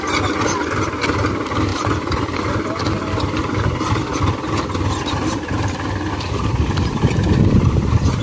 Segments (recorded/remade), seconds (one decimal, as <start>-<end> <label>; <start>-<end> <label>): 0.0-8.2 recorded

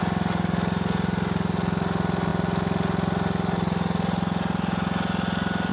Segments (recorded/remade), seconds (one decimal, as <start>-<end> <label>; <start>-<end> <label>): 0.0-5.7 recorded

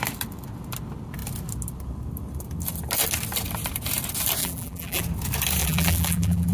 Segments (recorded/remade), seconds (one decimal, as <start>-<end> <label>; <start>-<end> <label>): 0.0-4.4 recorded; 4.4-5.0 remade; 5.0-5.6 recorded; 5.6-6.5 remade

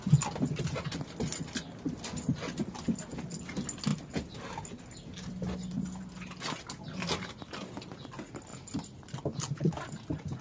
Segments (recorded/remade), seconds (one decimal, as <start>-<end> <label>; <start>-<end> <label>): 0.0-10.4 recorded

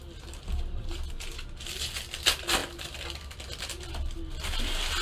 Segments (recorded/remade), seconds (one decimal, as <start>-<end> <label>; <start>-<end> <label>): 0.0-5.0 recorded

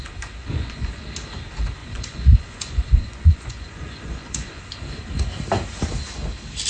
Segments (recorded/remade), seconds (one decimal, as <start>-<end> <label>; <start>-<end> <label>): 0.0-0.4 recorded; 0.4-1.0 remade; 1.0-1.8 recorded; 1.8-4.6 remade; 4.6-6.7 recorded